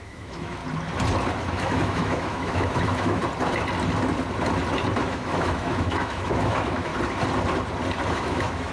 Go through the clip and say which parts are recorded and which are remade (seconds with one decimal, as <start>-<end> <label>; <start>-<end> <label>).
0.0-0.6 remade; 0.6-1.5 recorded; 1.5-3.2 remade; 3.2-5.0 recorded; 5.0-6.9 remade; 6.9-8.1 recorded; 8.1-8.7 remade